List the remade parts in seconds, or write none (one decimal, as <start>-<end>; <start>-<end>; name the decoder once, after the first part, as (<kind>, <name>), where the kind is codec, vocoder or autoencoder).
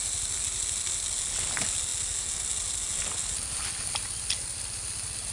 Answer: none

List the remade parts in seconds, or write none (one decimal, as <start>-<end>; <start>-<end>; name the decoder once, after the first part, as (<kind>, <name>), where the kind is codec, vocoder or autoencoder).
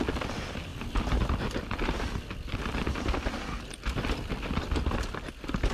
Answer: none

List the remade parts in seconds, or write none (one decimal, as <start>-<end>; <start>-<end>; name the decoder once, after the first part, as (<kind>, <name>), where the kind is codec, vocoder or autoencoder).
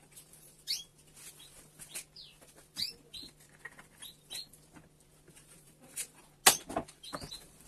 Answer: 0.0-0.9 (vocoder, BigVGAN v2); 5.3-6.2; 6.9-7.7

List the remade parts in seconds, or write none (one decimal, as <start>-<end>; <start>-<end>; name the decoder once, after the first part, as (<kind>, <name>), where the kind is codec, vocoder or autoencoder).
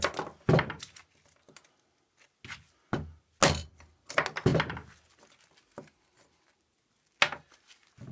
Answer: none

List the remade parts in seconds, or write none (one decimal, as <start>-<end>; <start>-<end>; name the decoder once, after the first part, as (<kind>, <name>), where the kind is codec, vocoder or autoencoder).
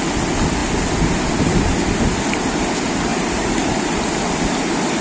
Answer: 3.1-3.9 (vocoder, BigVGAN v2)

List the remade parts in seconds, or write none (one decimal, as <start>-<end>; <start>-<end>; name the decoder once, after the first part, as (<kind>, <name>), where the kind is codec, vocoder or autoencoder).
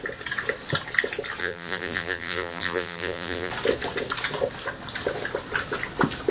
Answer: 1.4-3.5 (vocoder, BigVGAN v2)